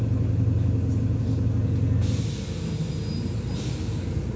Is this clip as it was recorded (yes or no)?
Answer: yes